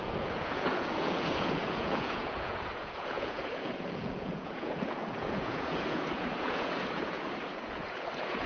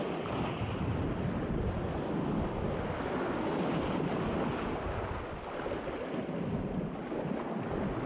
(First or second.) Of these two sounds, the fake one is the first